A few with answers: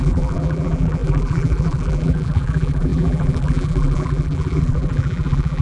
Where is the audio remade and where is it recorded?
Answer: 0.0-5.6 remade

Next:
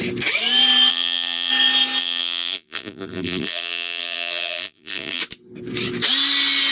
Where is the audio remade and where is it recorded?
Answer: 0.0-0.9 recorded; 0.9-1.5 remade; 1.5-2.0 recorded; 2.0-5.2 remade; 5.2-6.7 recorded

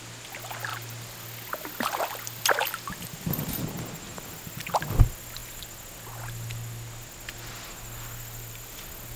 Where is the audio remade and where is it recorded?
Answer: 0.0-9.2 recorded

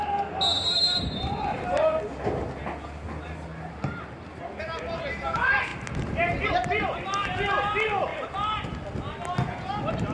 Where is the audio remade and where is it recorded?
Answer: 0.0-0.5 recorded; 0.5-1.2 remade; 1.2-8.1 recorded; 8.1-8.7 remade; 8.7-10.1 recorded

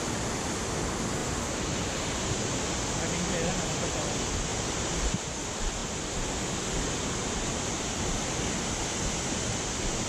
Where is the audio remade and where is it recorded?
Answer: 0.0-1.2 recorded; 1.2-2.5 remade; 2.5-4.5 recorded; 4.5-5.0 remade; 5.0-10.1 recorded

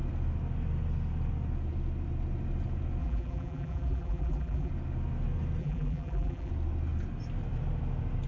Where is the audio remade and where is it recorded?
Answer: 0.0-3.0 recorded; 3.0-4.7 remade; 4.7-5.6 recorded; 5.6-6.5 remade; 6.5-8.3 recorded